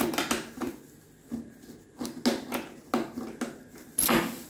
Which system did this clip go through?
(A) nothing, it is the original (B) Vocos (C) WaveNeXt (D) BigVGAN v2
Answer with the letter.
A